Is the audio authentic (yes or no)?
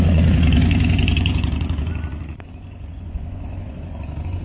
no